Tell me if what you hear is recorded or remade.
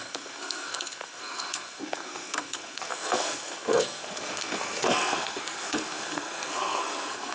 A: remade